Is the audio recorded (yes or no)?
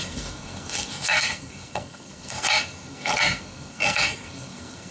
no